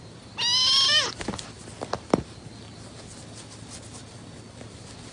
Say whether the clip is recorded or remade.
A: recorded